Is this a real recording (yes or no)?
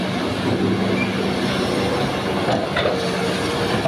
yes